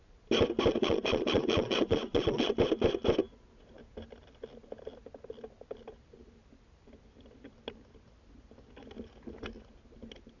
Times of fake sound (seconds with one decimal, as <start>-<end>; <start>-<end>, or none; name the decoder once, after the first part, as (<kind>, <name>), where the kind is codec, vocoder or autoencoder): 0.7-2.5 (vocoder, Vocos)